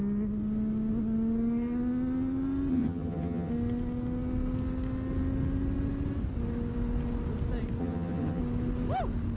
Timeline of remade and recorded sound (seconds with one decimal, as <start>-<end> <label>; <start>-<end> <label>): 0.0-2.7 recorded; 2.7-3.5 remade; 3.5-7.8 recorded; 7.8-8.4 remade; 8.4-9.4 recorded